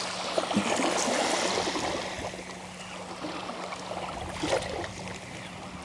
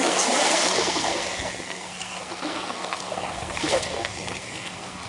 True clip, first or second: first